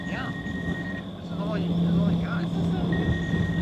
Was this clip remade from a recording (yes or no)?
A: no